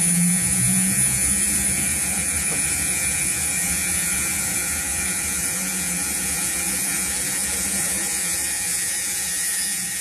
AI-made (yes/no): yes